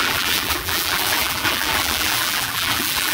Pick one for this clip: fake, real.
fake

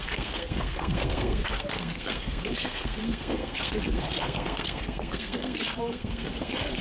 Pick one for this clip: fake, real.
fake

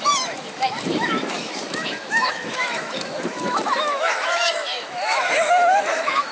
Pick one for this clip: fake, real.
fake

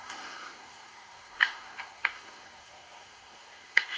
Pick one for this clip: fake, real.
fake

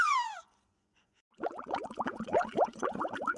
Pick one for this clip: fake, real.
fake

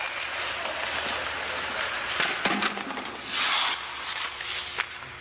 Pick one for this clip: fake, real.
real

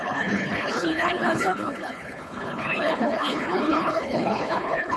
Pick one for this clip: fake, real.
fake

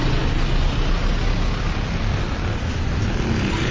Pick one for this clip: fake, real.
real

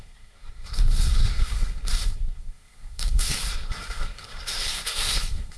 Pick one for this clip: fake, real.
fake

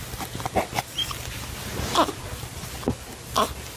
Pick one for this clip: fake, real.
real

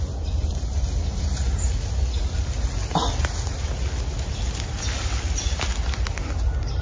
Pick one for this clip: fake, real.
real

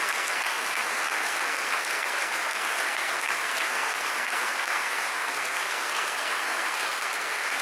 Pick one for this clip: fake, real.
fake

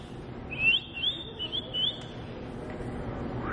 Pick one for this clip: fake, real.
real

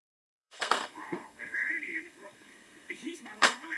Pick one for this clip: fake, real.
fake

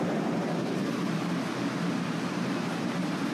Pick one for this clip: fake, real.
fake